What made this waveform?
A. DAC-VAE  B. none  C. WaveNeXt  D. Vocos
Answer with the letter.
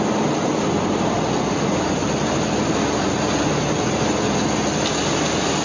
B